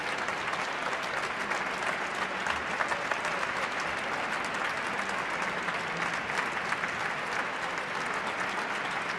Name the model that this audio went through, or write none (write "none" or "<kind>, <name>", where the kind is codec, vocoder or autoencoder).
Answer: none